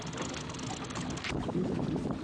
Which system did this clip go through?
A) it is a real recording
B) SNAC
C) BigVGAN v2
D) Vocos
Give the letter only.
A